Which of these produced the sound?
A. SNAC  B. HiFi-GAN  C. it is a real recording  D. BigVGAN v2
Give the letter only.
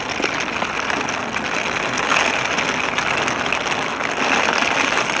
C